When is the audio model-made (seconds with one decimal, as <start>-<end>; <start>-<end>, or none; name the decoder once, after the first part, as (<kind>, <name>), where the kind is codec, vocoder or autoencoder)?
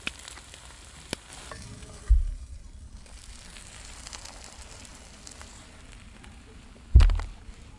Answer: 0.0-1.3 (vocoder, BigVGAN v2); 2.1-7.8